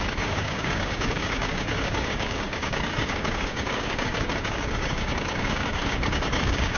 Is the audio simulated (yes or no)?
yes